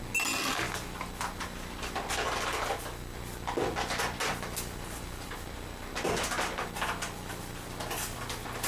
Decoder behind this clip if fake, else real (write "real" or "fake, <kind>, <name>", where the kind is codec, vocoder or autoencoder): real